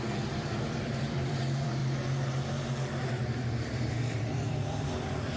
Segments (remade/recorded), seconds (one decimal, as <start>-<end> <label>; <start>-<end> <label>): 0.0-1.8 remade; 1.8-3.0 recorded; 3.0-5.4 remade